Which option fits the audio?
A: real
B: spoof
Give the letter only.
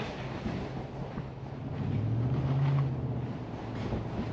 A